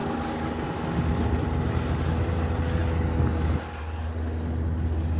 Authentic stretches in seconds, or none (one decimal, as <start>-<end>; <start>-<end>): 0.0-5.2